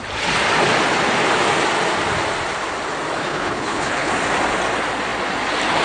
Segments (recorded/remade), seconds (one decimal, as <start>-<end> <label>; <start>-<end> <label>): 0.0-3.2 recorded; 3.2-4.1 remade; 4.1-5.8 recorded